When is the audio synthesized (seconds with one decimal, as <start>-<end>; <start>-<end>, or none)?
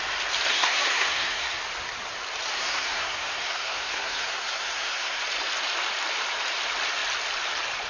0.5-1.6; 2.6-5.2